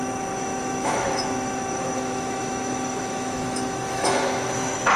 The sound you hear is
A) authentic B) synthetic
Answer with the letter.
B